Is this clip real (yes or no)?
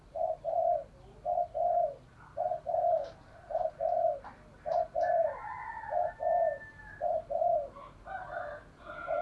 yes